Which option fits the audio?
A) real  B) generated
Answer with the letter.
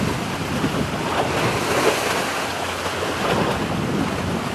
A